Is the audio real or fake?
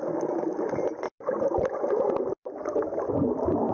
real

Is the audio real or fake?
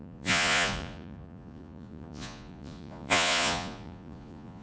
fake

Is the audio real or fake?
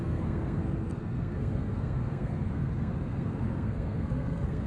fake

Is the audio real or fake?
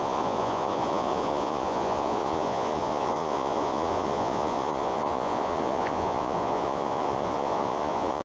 fake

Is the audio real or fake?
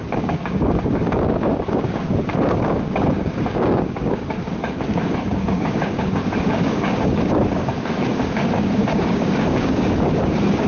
fake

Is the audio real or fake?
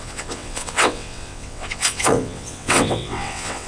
fake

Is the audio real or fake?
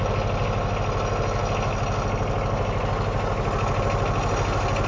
real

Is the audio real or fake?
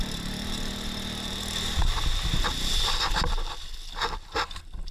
fake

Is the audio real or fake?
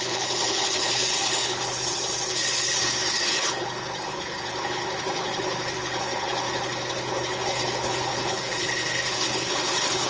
fake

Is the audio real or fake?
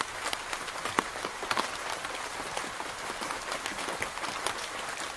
real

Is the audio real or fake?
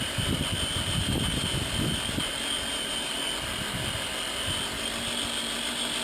real